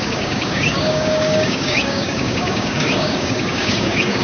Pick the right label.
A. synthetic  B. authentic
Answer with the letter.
A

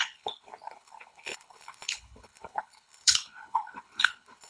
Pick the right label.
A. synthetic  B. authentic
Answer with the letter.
A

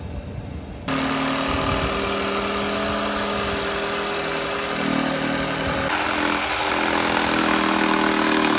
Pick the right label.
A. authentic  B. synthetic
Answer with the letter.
A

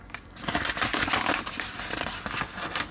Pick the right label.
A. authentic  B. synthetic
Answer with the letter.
A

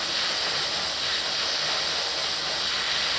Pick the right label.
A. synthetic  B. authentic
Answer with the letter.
B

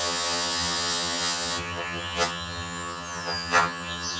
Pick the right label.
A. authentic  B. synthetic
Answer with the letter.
B